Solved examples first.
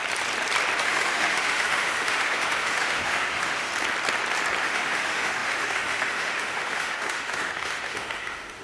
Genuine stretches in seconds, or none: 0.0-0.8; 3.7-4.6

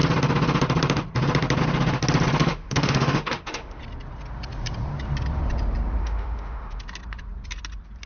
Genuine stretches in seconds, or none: 0.0-2.4; 3.8-6.0; 6.8-8.1

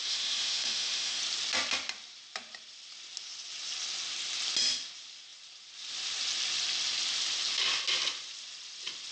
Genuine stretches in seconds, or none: 1.2-9.1

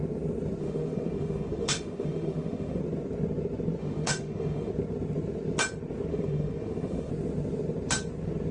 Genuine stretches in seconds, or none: 0.0-0.6; 2.8-3.8; 4.7-6.1; 7.1-8.5

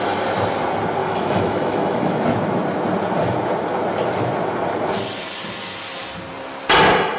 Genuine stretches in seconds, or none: 0.0-1.0; 2.1-7.2

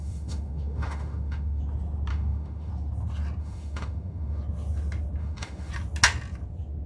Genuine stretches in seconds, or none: 1.6-2.1; 2.7-3.4; 4.4-5.2; 5.7-6.9

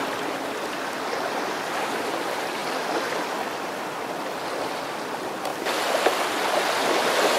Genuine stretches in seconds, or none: 0.0-7.4